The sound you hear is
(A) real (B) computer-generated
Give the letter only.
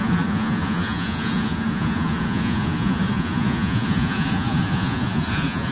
B